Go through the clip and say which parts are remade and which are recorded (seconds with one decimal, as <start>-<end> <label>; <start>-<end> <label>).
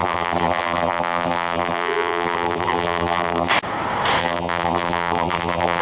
0.0-3.5 remade; 3.5-4.2 recorded; 4.2-5.8 remade